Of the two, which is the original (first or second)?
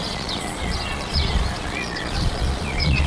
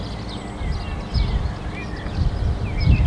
second